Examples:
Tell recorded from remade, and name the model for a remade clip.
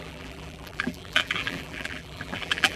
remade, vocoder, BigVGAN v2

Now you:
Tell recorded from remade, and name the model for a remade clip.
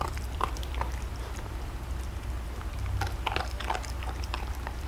remade, vocoder, BigVGAN v2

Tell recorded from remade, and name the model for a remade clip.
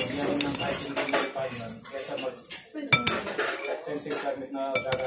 recorded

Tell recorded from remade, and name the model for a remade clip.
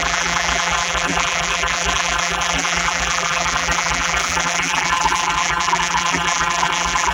remade, vocoder, BigVGAN v2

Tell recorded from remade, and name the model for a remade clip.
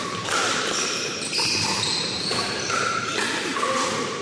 remade, vocoder, BigVGAN v2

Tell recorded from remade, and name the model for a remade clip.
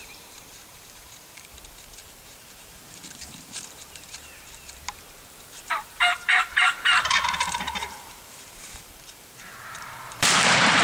remade, vocoder, BigVGAN v2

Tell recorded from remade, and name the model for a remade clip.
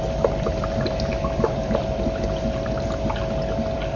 remade, vocoder, BigVGAN v2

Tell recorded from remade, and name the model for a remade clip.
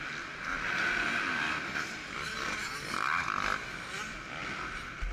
recorded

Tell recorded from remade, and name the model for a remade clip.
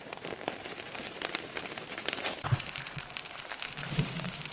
remade, vocoder, BigVGAN v2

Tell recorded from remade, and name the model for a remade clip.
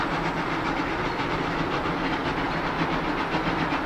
recorded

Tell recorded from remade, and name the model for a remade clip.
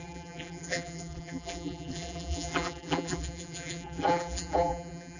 remade, vocoder, BigVGAN v2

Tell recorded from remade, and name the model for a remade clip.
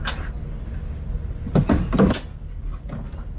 recorded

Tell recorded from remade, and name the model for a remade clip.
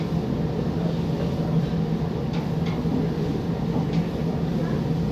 recorded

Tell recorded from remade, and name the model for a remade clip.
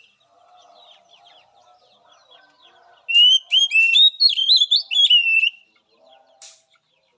recorded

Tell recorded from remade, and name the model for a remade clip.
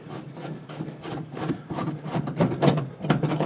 remade, vocoder, BigVGAN v2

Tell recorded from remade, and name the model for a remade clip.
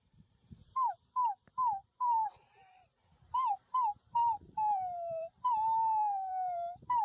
remade, vocoder, BigVGAN v2